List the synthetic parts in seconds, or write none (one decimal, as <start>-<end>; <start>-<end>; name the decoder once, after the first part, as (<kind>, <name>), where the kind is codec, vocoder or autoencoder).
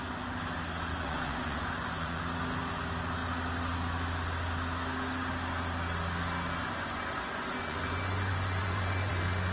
0.9-2.2 (vocoder, Vocos); 6.6-9.1